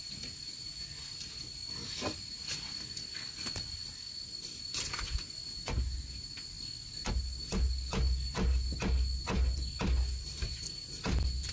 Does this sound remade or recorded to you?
recorded